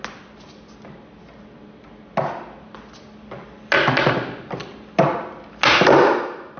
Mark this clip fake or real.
real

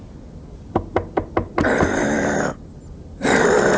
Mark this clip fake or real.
real